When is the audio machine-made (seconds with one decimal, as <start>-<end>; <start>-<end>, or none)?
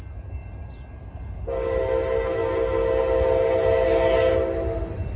none